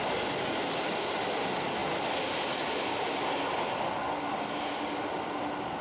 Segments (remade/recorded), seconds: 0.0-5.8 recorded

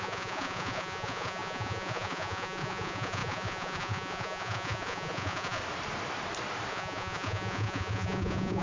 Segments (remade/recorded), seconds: 0.0-5.6 remade; 5.6-6.7 recorded; 6.7-8.6 remade

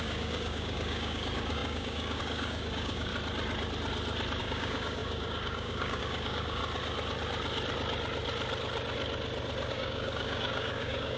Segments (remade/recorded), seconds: 0.0-3.1 remade; 3.1-4.4 recorded; 4.4-6.6 remade; 6.6-9.7 recorded; 9.7-11.2 remade

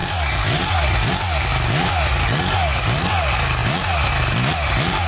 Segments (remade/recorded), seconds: 0.0-1.1 remade; 1.1-2.1 recorded; 2.1-3.1 remade; 3.1-5.1 recorded